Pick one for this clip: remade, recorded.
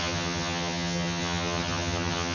remade